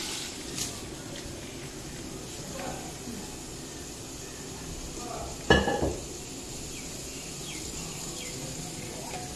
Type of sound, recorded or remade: recorded